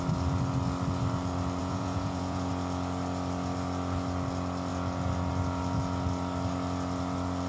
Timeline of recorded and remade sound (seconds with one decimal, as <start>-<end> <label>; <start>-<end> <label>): 0.0-1.6 recorded; 1.6-2.5 remade; 2.5-7.5 recorded